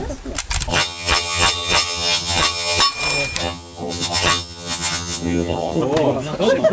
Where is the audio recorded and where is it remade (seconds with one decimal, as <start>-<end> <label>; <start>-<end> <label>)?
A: 0.0-0.7 recorded; 0.7-2.8 remade; 2.8-3.4 recorded; 3.4-5.8 remade; 5.8-6.7 recorded